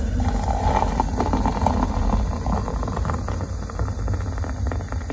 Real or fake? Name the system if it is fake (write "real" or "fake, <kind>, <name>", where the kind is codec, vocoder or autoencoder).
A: real